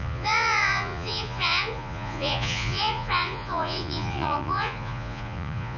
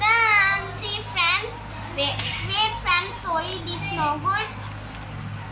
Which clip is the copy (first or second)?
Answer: first